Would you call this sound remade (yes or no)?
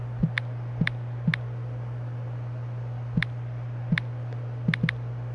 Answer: no